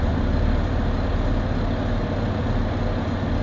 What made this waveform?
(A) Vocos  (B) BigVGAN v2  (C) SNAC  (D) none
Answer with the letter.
D